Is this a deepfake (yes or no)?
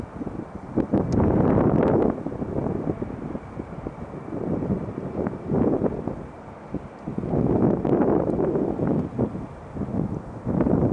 no